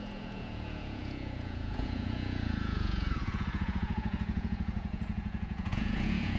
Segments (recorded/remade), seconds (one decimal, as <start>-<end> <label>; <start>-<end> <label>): 0.0-6.4 remade